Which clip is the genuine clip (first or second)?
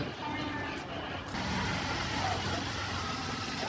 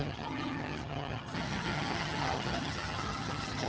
first